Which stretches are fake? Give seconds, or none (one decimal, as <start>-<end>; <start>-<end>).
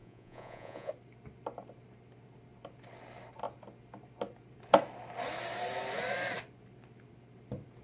0.0-0.9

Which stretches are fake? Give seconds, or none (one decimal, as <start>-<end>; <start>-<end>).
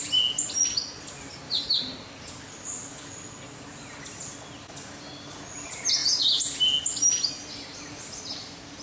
6.0-6.6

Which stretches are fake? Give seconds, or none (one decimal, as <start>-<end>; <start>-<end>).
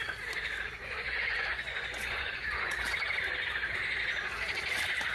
0.8-2.9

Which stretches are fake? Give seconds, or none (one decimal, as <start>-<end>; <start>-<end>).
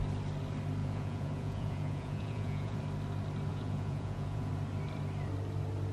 0.8-2.8; 3.5-4.5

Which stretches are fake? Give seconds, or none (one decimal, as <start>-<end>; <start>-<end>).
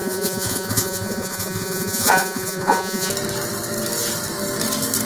0.0-3.1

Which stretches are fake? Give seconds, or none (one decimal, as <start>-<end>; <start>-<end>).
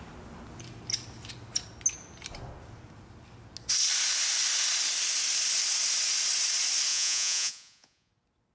6.9-8.1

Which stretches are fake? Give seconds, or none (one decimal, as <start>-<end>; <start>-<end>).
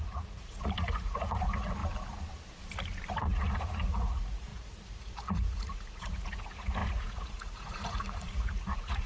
0.0-1.8; 3.2-9.1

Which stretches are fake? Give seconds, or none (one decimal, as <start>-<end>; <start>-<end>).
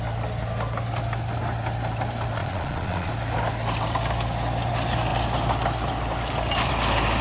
2.4-3.1